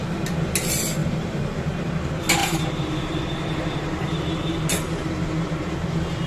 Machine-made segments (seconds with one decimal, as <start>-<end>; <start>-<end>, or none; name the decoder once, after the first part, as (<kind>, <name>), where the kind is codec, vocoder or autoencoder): 1.0-1.6 (vocoder, BigVGAN v2); 2.4-6.3

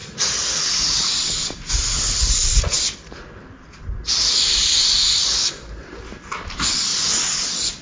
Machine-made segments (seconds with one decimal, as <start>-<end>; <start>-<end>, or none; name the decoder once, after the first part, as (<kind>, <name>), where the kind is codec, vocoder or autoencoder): none

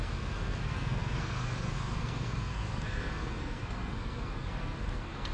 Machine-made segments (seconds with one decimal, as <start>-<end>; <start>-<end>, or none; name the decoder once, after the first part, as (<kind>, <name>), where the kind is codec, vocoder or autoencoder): 0.0-5.3 (codec, SNAC)

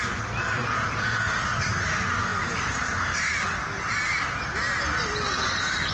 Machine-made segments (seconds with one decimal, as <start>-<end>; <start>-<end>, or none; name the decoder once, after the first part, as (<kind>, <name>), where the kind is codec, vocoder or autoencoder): 0.6-1.3 (vocoder, Vocos)

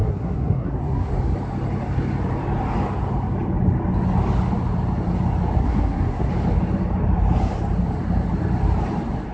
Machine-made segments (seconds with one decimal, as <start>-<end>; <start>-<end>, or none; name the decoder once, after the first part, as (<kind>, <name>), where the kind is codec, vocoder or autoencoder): 0.0-1.1 (codec, SNAC); 5.6-6.3

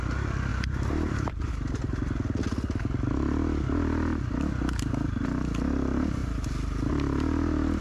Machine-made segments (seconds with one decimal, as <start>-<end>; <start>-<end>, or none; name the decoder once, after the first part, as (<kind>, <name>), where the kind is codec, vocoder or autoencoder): 0.5-1.5 (vocoder, BigVGAN v2)

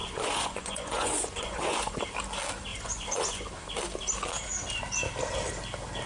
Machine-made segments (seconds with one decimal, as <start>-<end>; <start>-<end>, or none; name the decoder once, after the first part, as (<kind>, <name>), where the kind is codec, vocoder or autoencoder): 0.0-2.0 (vocoder, Vocos); 2.7-3.5

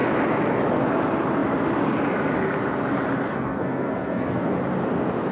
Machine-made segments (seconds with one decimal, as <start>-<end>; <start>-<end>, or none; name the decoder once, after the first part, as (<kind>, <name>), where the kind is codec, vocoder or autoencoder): 3.3-4.5 (codec, SNAC)